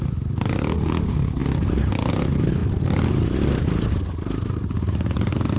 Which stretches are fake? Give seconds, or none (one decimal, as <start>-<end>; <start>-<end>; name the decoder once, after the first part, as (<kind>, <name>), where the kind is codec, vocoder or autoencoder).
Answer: none